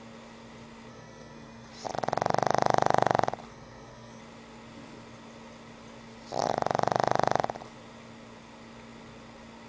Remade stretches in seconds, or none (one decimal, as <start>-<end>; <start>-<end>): 0.9-1.7; 3.5-4.2